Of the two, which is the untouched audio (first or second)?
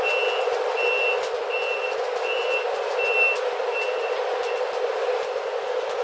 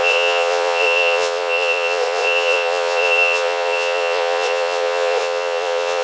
first